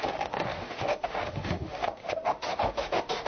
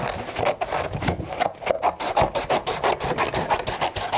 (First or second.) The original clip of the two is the second